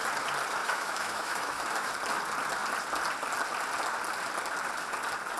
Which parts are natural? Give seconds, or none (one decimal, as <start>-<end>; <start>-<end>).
0.0-0.6; 1.9-5.4